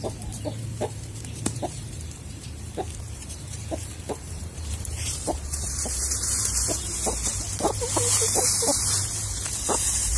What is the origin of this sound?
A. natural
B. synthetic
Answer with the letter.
B